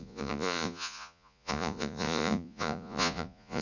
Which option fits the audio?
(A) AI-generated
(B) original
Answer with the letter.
A